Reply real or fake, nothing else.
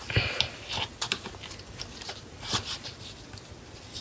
real